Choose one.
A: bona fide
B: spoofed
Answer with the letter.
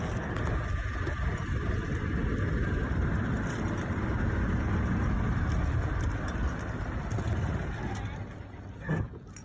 A